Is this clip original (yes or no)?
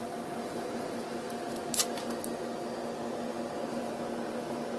yes